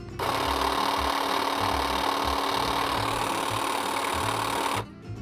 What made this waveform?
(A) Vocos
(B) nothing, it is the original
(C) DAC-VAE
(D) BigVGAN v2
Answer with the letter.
B